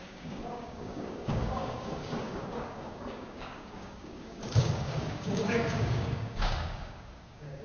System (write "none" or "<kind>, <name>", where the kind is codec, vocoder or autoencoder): codec, DAC